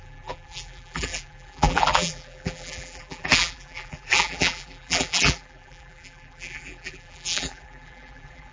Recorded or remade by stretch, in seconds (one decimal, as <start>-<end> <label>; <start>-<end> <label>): 0.0-8.5 remade